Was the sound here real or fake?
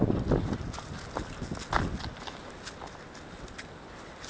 real